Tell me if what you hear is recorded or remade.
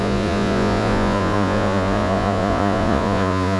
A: remade